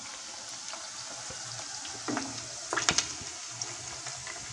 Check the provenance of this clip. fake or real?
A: real